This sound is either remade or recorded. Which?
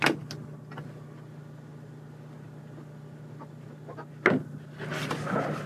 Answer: recorded